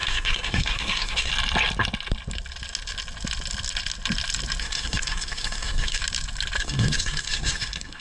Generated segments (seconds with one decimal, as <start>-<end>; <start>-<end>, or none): 0.0-1.3; 4.6-6.0; 6.6-8.0